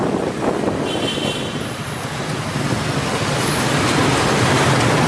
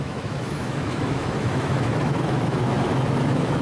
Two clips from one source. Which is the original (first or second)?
first